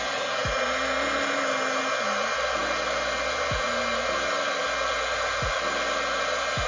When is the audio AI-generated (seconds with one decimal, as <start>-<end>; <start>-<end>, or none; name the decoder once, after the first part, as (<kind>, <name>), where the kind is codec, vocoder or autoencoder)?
none